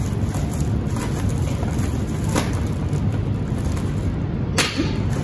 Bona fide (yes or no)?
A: yes